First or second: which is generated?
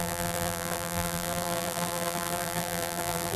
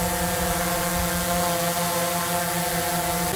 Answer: first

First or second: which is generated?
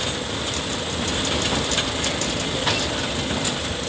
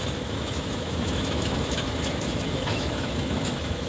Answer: second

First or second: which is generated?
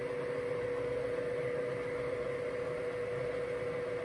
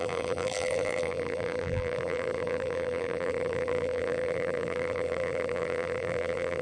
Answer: second